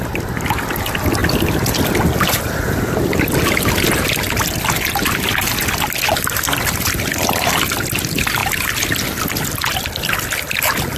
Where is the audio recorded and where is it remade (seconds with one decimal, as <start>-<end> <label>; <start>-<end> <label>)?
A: 0.0-1.2 recorded; 1.2-2.0 remade; 2.0-11.0 recorded